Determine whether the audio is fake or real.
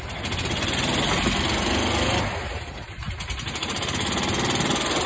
real